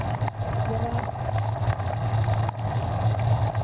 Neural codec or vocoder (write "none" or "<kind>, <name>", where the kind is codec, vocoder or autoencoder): none